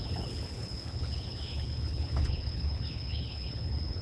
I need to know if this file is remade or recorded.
remade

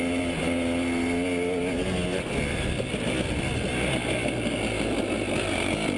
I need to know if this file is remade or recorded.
recorded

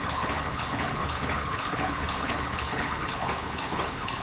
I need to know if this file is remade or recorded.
remade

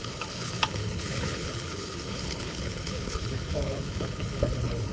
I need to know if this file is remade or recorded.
remade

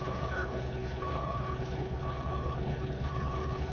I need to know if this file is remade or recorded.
remade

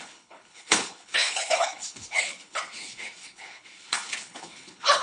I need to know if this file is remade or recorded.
remade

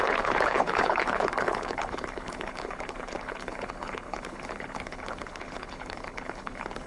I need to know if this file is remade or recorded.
remade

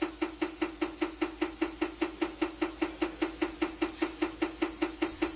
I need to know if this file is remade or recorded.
recorded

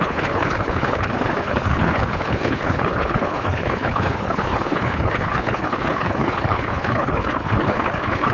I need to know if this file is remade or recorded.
remade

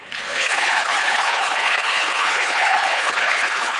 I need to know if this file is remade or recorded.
remade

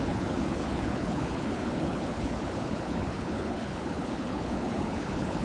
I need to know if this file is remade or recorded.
remade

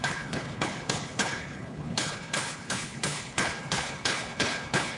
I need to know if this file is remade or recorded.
remade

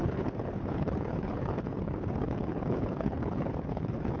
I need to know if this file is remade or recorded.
remade